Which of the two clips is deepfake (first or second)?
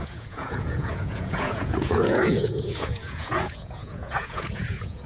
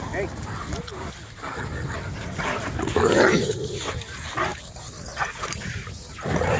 first